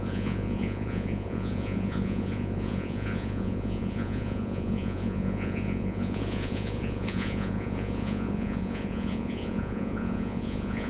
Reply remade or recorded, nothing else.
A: remade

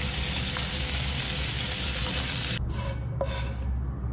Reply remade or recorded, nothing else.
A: recorded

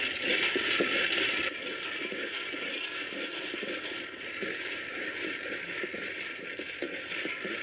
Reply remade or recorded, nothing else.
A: recorded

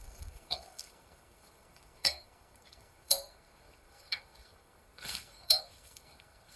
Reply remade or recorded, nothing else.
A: remade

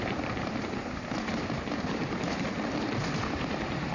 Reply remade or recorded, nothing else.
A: remade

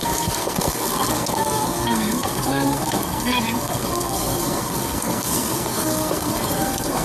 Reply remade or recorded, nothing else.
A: remade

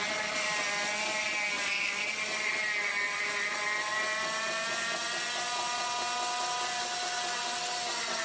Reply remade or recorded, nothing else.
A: recorded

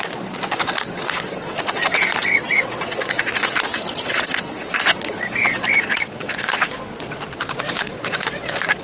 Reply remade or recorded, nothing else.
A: remade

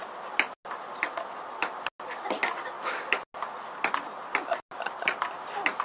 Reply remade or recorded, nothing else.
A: recorded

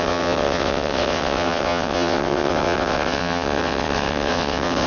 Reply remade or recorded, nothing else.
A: remade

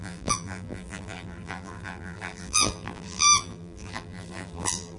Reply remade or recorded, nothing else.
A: remade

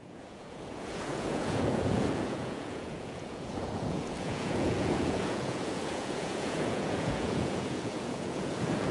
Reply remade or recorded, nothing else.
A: remade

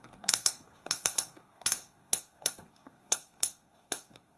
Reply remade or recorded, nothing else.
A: remade